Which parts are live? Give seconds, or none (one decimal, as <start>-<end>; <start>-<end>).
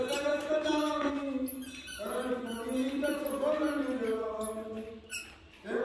0.0-5.8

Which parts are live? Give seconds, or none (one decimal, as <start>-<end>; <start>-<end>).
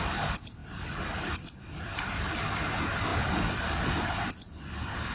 0.0-0.6; 2.0-3.1; 3.8-5.1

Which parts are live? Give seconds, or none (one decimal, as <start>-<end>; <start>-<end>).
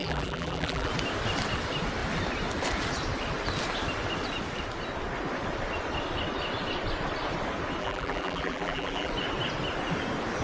0.9-7.8; 9.1-10.4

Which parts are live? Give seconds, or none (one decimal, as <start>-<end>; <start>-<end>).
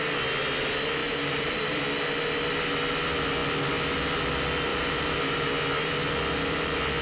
0.0-1.0; 1.8-4.7; 5.5-7.0